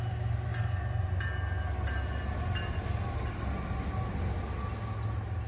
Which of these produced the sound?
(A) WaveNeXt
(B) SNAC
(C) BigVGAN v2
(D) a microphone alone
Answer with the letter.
D